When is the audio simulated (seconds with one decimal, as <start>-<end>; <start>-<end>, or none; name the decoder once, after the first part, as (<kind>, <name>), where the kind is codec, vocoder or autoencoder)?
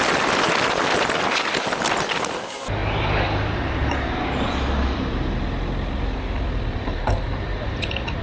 none